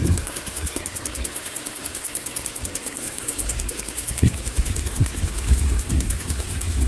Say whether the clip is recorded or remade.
remade